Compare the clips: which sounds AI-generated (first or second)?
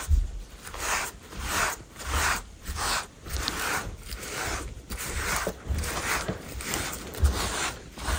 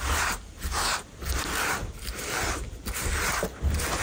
first